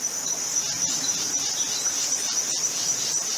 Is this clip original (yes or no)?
yes